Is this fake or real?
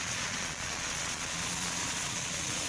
fake